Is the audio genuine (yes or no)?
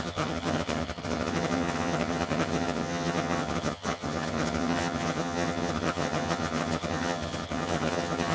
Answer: no